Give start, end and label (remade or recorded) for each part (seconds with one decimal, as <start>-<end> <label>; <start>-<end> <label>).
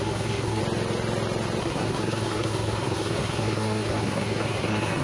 0.0-0.6 remade; 0.6-1.6 recorded; 1.6-5.0 remade